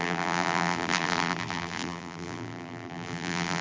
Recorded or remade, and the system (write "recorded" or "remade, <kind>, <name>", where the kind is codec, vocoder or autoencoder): remade, vocoder, BigVGAN v2